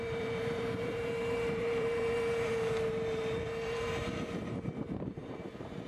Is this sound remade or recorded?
remade